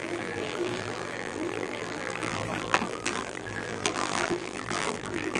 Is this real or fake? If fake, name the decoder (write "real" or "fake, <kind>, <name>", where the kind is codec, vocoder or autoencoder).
fake, vocoder, BigVGAN v2